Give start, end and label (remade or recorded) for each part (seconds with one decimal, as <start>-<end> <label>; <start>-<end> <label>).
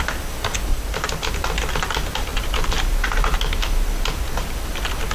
0.0-0.7 recorded; 0.7-1.3 remade; 1.3-2.3 recorded; 2.3-4.6 remade; 4.6-5.1 recorded